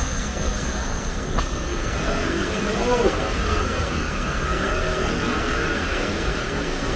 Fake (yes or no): yes